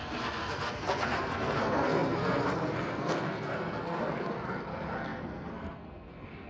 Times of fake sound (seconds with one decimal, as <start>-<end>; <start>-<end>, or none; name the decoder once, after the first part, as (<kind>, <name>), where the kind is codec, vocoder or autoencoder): 0.0-6.5 (codec, SNAC)